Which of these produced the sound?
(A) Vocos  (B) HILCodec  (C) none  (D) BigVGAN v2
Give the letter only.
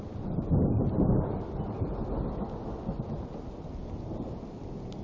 C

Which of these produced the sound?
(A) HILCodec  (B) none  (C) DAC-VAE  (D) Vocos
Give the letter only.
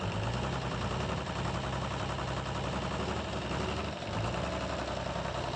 B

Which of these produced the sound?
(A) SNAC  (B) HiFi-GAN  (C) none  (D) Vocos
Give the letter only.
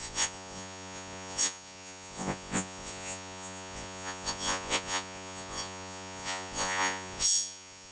D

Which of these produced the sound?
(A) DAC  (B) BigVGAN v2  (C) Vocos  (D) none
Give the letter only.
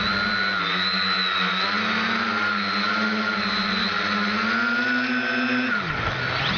D